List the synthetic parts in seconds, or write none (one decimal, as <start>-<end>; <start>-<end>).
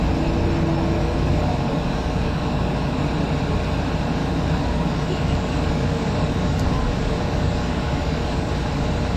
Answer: 1.0-3.0; 4.2-8.5